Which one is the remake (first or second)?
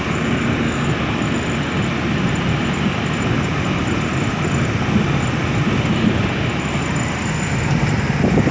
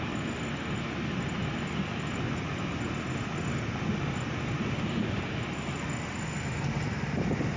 first